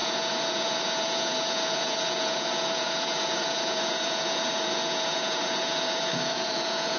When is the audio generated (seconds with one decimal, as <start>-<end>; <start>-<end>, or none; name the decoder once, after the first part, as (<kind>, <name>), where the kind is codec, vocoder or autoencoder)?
0.0-7.0 (vocoder, Vocos)